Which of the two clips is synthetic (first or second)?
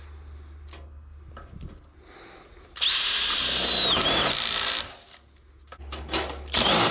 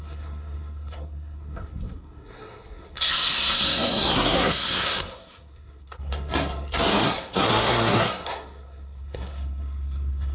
second